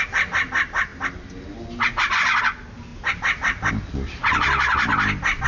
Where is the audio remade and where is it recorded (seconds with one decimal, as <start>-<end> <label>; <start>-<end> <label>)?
0.0-5.5 recorded